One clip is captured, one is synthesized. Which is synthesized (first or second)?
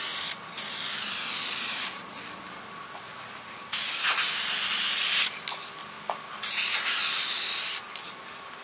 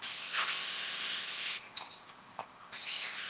second